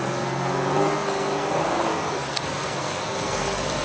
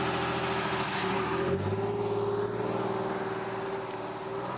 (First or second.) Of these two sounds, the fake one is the first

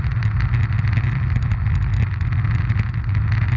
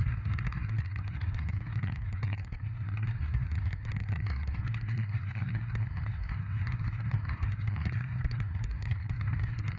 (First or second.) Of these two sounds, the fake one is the second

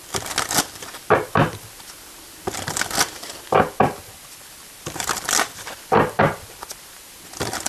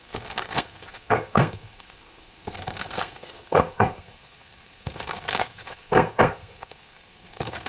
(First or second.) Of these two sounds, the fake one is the second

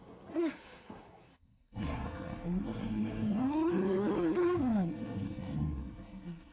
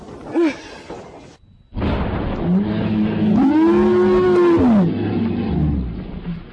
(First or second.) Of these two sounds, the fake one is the first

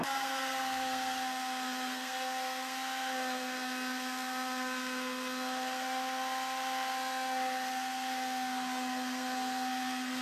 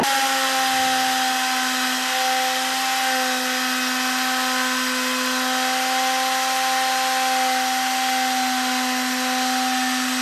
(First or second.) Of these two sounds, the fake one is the first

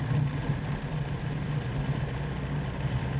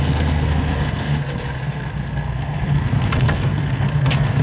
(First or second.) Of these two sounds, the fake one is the second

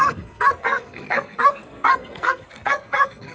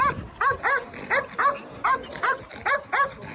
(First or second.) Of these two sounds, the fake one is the first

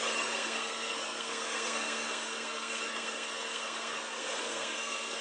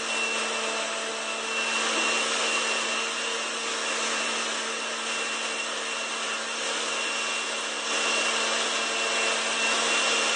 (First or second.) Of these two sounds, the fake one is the first